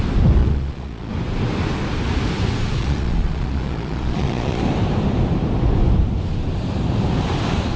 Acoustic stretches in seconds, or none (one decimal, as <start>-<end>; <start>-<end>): 0.0-0.4; 1.1-2.8; 4.6-7.8